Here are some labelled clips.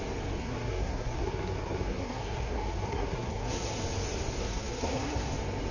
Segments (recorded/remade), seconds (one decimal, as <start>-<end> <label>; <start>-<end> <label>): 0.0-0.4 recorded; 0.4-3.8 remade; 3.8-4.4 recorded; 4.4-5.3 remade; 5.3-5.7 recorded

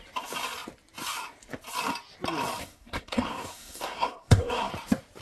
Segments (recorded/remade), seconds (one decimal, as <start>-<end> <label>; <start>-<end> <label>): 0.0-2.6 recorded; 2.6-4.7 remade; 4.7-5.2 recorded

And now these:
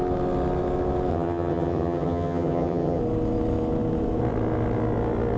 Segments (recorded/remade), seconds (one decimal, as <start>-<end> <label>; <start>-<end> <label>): 0.0-1.1 recorded; 1.1-3.0 remade; 3.0-5.4 recorded